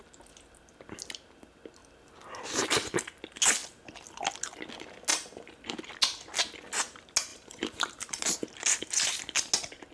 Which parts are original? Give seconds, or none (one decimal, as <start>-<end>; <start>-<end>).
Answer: 0.0-5.1; 5.9-7.3; 8.2-9.9